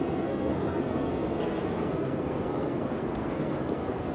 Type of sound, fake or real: fake